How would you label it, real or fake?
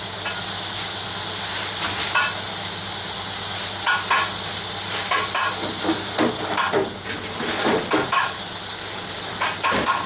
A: real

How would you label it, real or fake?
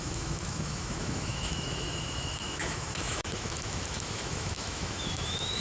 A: fake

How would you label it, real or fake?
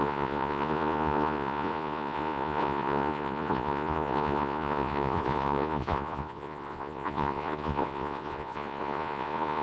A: fake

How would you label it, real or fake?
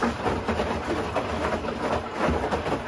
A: real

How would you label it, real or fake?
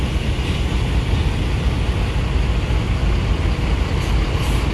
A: real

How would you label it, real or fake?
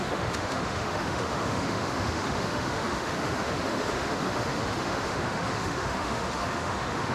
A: fake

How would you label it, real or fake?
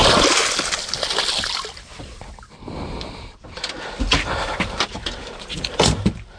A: real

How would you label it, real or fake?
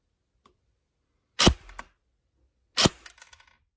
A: real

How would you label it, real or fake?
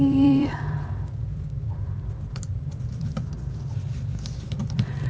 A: fake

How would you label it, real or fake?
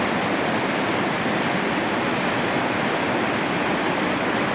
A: real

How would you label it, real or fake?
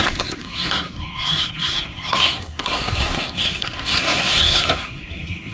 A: fake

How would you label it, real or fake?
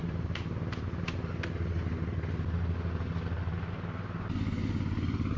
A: real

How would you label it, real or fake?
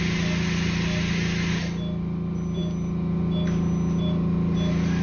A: real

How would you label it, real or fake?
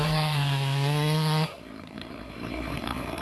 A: fake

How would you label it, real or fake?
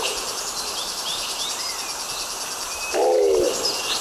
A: real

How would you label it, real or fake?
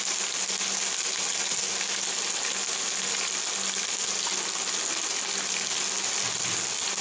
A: real